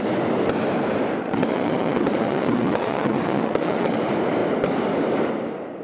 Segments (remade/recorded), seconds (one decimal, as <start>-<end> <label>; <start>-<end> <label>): 0.0-1.2 recorded; 1.2-4.0 remade; 4.0-5.8 recorded